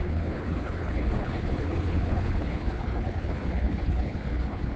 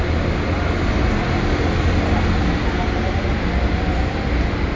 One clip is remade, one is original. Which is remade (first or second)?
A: first